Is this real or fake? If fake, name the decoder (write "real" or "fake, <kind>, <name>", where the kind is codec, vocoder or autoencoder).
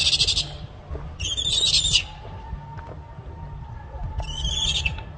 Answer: real